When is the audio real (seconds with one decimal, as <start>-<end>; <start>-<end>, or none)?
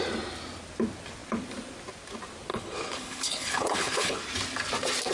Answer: 0.0-2.5; 4.2-5.1